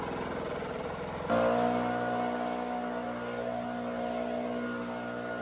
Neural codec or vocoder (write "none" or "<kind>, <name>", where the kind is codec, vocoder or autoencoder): none